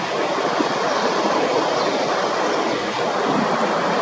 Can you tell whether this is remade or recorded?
recorded